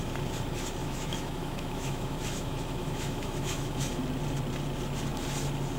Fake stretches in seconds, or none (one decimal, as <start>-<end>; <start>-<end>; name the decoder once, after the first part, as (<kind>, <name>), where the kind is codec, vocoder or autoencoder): 0.8-4.0 (autoencoder, DAC-VAE)